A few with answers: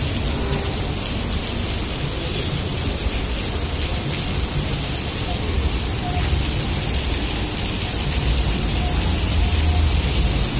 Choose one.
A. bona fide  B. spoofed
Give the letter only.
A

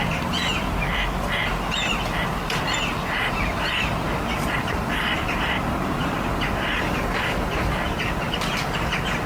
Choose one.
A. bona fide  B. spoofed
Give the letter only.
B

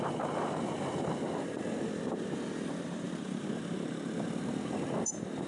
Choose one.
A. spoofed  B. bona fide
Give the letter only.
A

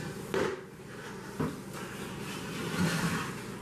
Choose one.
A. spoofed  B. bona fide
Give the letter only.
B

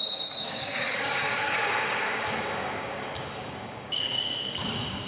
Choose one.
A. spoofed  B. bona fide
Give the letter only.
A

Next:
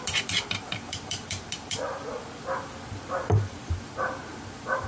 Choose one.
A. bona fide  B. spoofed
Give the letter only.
B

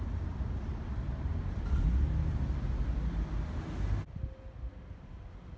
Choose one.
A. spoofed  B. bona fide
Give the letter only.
B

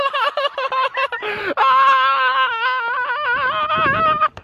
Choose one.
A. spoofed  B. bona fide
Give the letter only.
B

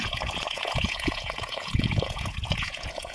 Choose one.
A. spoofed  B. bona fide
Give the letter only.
A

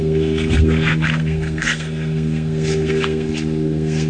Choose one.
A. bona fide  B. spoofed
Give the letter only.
B